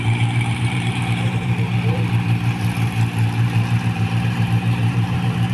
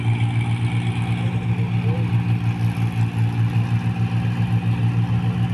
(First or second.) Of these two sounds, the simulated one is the first